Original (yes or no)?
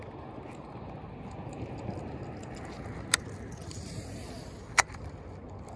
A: yes